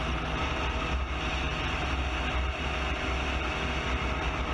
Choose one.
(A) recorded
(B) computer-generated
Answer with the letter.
A